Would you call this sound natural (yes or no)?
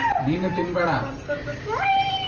no